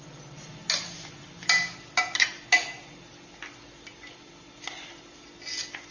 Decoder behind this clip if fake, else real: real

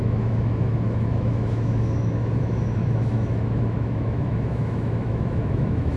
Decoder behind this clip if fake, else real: fake, autoencoder, DAC-VAE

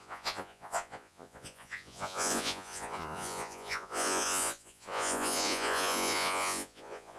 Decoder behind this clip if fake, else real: fake, vocoder, Vocos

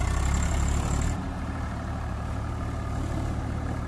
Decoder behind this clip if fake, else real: fake, vocoder, BigVGAN v2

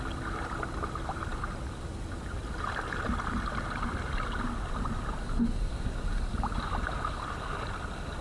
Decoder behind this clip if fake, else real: real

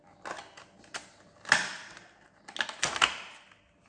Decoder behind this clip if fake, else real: real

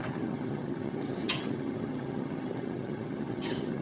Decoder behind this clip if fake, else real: fake, vocoder, HiFi-GAN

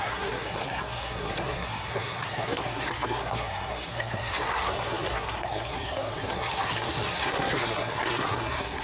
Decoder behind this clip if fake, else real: fake, codec, SNAC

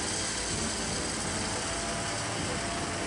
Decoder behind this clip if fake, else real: real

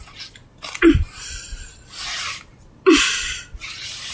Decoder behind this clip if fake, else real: real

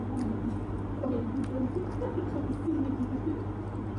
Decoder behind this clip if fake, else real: real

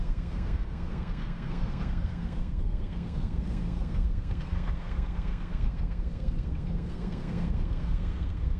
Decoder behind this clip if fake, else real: fake, codec, SNAC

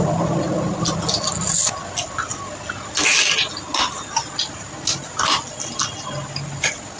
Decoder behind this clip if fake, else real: real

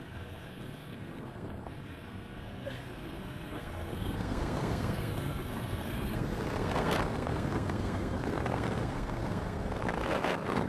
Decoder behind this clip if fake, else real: fake, codec, SNAC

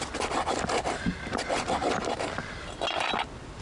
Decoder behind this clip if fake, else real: real